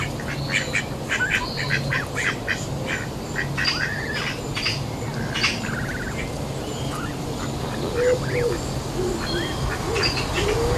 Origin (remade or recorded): recorded